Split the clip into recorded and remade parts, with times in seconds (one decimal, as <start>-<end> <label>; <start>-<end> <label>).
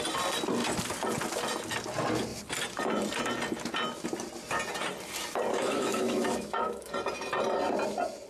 0.0-5.5 recorded; 5.5-6.9 remade; 6.9-8.3 recorded